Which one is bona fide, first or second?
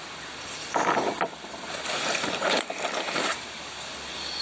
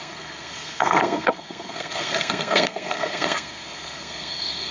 first